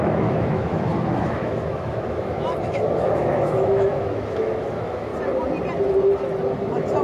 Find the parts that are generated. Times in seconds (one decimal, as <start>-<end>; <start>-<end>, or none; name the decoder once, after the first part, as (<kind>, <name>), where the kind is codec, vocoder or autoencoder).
0.0-5.1 (autoencoder, DAC-VAE)